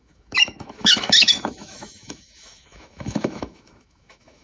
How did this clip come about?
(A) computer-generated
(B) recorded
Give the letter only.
A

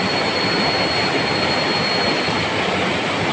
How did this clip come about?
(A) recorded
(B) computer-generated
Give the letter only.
A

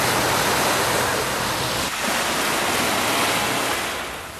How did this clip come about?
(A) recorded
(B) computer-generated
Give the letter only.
A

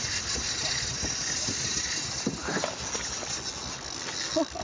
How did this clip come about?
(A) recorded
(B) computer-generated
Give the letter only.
A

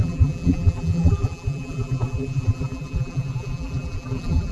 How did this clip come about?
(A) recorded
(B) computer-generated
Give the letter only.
B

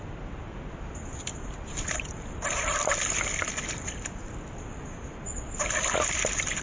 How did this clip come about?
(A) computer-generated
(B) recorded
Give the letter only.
B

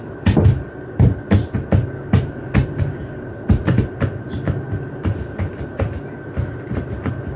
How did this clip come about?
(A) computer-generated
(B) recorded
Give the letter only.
B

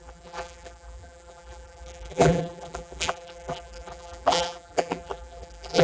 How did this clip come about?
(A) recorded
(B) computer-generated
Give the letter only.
B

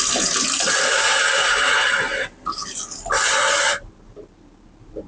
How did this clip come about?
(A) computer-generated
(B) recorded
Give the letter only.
B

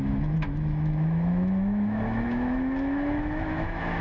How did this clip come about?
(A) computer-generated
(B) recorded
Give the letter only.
A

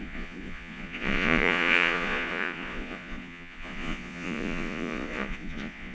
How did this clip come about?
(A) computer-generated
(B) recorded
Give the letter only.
A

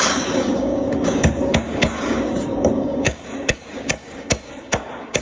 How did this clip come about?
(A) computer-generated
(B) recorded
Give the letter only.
A